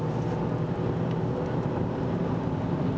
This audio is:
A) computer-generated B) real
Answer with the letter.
B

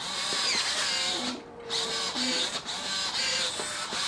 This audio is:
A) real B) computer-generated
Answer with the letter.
A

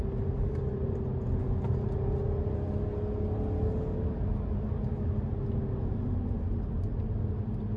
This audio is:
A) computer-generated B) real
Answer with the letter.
B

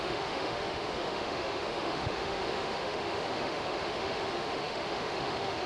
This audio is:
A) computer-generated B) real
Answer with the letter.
A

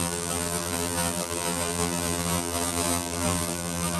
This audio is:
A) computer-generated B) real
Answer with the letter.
A